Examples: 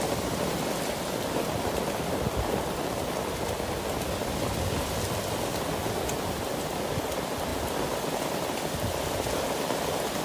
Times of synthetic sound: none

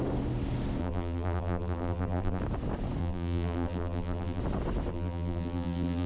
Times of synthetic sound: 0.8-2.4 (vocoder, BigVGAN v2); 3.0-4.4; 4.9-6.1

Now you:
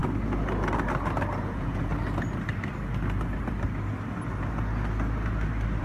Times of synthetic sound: 1.4-1.9 (vocoder, Vocos)